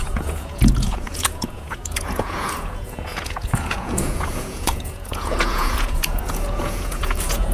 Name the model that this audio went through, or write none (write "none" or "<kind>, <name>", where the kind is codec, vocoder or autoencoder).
vocoder, Vocos